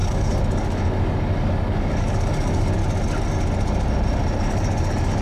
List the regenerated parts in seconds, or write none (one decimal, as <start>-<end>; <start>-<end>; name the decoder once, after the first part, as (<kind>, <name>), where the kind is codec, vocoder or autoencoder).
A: 0.0-2.8 (codec, DAC); 4.4-5.2